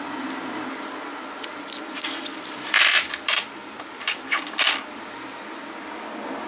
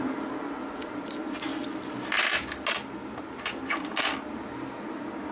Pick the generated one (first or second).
first